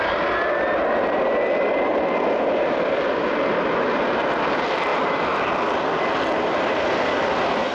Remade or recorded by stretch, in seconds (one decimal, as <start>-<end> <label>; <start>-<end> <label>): 0.0-7.7 recorded